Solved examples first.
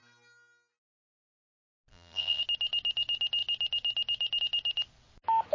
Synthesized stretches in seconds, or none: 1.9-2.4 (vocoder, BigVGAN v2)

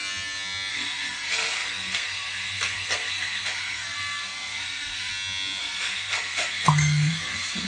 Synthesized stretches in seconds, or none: 0.7-5.1 (codec, SNAC); 5.6-7.7

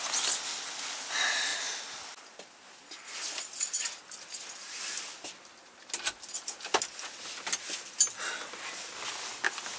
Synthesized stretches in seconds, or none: none